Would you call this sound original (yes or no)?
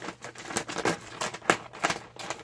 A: yes